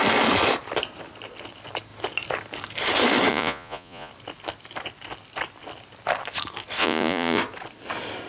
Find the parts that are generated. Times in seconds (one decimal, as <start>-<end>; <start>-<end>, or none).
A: 3.3-4.1; 6.8-7.4

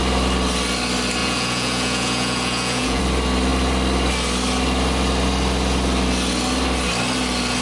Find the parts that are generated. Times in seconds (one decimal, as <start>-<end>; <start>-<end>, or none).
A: 1.2-3.0

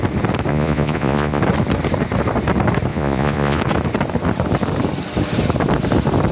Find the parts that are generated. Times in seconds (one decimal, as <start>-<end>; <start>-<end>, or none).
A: 0.5-1.4; 2.9-3.6

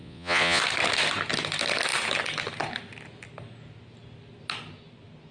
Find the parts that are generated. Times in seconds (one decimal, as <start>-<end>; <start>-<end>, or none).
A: 0.0-0.6

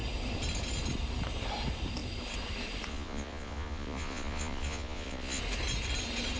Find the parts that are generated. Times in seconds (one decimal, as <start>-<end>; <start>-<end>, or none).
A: 2.9-5.4

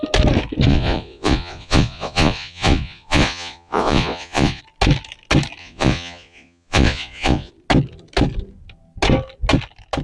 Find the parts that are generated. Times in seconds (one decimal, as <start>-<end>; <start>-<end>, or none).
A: 0.7-4.6; 5.6-7.5

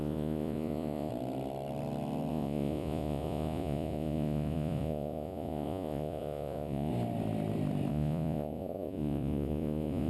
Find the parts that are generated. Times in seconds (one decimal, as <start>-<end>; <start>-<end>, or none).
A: 0.0-1.1; 2.3-6.9; 7.9-10.1